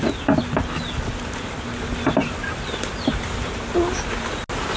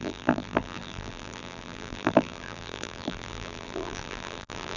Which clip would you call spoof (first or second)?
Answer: second